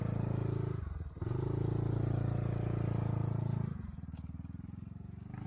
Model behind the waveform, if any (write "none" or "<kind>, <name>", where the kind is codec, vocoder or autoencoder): none